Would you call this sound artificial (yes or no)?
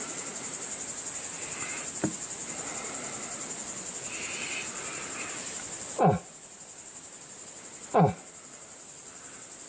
no